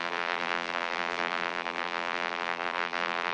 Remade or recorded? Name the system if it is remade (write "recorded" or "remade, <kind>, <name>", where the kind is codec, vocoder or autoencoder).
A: remade, vocoder, BigVGAN v2